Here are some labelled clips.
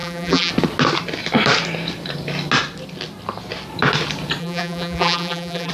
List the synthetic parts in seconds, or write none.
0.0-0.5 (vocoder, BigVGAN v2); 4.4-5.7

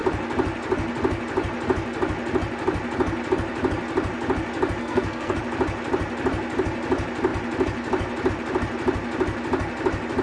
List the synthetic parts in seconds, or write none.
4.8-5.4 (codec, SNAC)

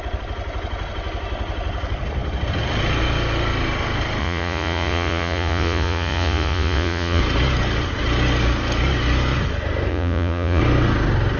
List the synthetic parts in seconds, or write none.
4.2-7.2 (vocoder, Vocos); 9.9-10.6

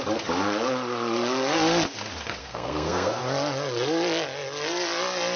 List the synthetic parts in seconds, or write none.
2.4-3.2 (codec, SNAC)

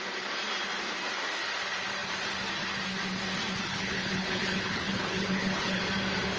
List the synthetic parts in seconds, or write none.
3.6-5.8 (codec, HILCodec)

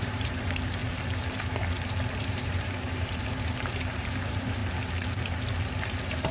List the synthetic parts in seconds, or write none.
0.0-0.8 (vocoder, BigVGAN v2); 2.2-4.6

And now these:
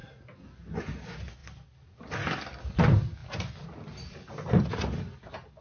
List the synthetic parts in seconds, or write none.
1.4-2.6 (vocoder, BigVGAN v2); 3.2-4.5